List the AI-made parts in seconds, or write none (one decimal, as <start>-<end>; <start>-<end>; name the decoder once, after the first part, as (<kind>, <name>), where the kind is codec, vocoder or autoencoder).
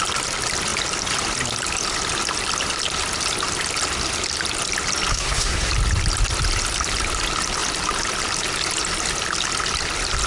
5.1-5.7 (codec, SNAC)